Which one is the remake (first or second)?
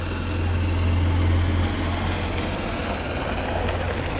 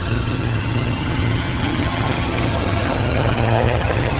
second